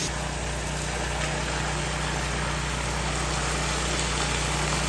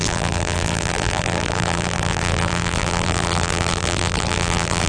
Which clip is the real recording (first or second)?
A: first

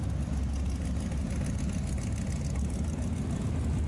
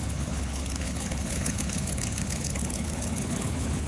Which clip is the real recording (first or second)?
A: first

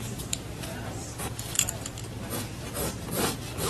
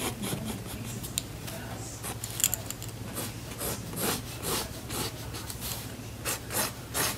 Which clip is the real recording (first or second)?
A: second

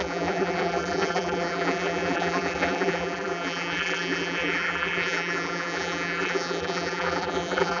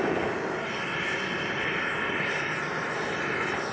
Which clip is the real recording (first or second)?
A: second